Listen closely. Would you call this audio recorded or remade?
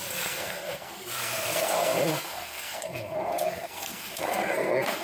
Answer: remade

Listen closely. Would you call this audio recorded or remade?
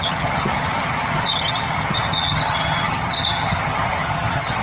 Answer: remade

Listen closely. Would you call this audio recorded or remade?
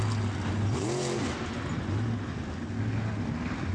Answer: recorded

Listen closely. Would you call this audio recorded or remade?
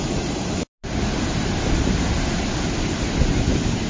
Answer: recorded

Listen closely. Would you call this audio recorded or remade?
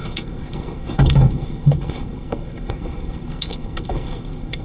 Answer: remade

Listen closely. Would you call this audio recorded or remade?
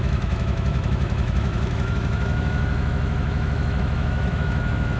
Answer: remade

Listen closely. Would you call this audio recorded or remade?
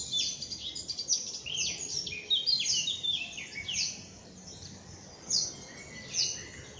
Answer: recorded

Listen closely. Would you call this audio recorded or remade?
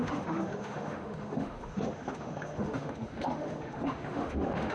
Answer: remade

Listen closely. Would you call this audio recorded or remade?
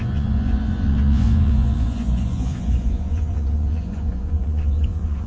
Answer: remade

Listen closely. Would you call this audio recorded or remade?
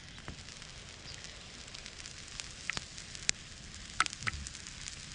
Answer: recorded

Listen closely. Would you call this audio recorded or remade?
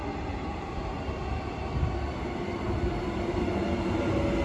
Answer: recorded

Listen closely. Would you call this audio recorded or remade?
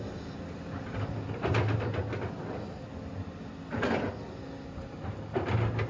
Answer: recorded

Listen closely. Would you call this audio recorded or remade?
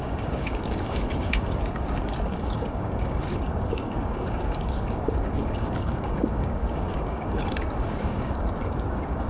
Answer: remade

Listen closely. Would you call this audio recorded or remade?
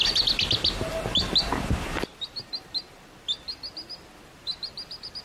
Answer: recorded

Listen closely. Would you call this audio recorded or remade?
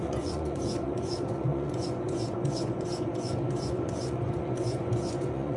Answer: remade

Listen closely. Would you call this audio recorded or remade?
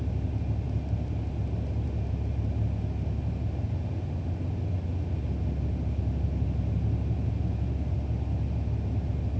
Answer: recorded